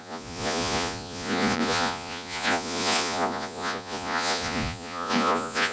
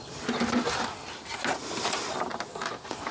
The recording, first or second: second